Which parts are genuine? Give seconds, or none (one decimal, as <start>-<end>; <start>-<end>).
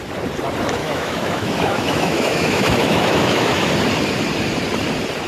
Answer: 0.0-0.8; 3.7-5.3